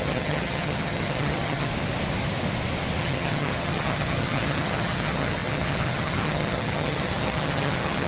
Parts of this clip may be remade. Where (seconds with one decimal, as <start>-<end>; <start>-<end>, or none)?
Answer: 0.0-1.7; 3.0-8.1